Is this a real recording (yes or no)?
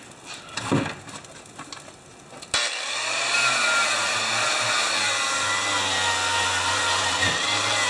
yes